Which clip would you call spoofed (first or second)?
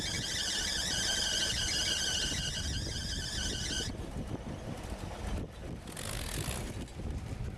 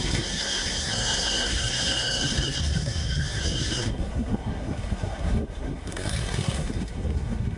second